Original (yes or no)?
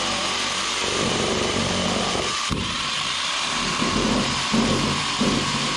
no